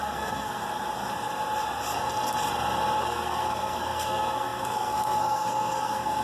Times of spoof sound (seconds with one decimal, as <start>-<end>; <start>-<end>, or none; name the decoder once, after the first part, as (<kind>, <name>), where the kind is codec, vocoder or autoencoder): 0.0-0.6 (codec, SNAC); 3.0-6.2